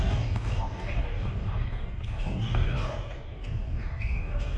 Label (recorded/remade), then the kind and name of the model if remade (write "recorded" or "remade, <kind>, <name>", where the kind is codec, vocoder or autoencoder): remade, codec, DAC